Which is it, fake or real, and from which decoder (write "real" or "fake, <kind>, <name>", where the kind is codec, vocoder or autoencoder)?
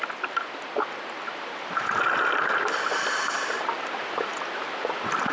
fake, vocoder, BigVGAN v2